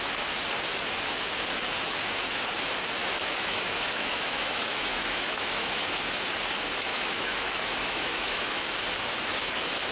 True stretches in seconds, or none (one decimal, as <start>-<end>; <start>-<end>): 0.0-3.0; 6.0-6.9; 8.6-9.9